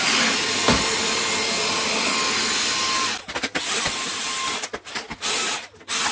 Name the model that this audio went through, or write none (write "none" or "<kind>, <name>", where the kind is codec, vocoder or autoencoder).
none